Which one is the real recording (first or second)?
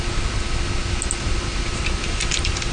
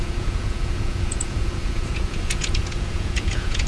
first